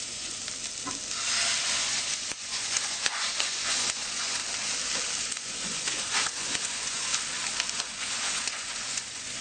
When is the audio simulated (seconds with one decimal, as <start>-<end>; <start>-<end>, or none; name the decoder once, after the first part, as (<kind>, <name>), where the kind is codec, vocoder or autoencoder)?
0.0-0.4 (vocoder, Vocos); 1.6-4.4; 5.2-7.1; 7.7-9.4